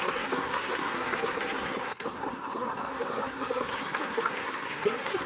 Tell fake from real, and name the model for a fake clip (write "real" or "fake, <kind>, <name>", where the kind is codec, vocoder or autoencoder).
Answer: fake, codec, SNAC